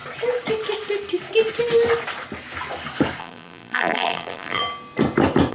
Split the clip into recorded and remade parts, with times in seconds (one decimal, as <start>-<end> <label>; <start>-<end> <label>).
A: 0.0-3.2 recorded; 3.2-4.6 remade; 4.6-5.5 recorded

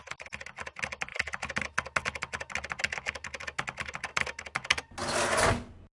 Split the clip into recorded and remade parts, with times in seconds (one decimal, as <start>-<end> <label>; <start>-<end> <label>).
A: 0.0-6.0 recorded

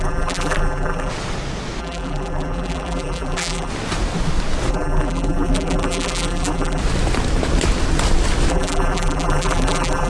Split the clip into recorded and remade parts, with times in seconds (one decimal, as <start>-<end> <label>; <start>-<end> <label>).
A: 0.0-1.1 remade; 1.1-1.8 recorded; 1.8-3.7 remade; 3.7-4.7 recorded; 4.7-6.8 remade; 6.8-8.5 recorded; 8.5-10.1 remade